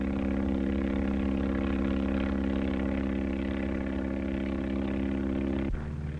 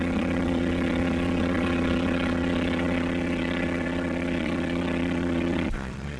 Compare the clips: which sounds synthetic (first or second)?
second